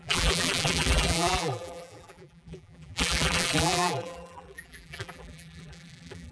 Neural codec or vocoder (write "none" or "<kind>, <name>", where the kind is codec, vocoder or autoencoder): vocoder, BigVGAN v2